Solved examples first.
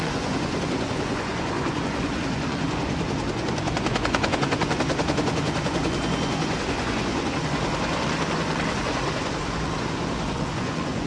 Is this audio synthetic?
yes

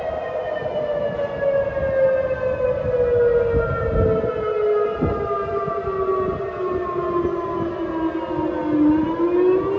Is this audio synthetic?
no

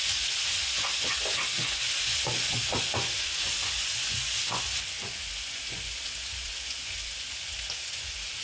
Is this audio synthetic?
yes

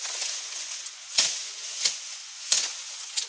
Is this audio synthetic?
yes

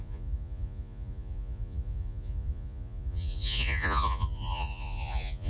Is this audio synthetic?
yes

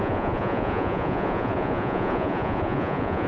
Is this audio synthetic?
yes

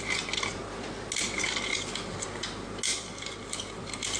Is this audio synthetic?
no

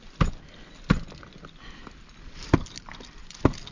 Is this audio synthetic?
no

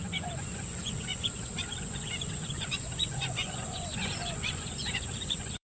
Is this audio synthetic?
yes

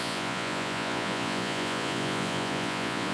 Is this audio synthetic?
yes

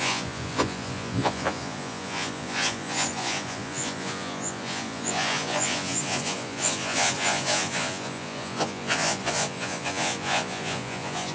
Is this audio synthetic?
yes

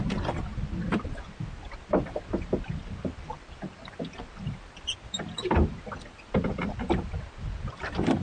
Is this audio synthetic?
no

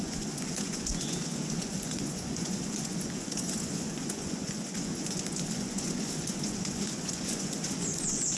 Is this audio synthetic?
yes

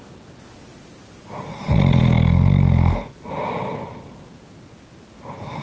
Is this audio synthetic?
no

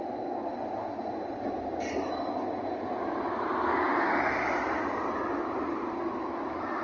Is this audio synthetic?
no